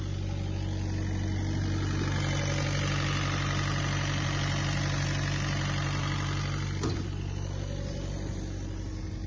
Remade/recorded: recorded